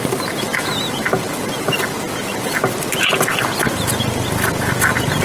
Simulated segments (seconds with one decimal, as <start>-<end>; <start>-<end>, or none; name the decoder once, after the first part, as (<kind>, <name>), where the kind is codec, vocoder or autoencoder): none